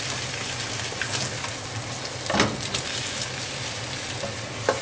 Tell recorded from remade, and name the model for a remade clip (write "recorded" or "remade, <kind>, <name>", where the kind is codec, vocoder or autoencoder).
recorded